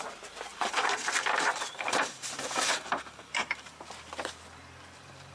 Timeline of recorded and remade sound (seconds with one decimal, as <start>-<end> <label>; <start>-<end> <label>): 0.0-0.5 recorded; 0.5-3.7 remade; 3.7-5.3 recorded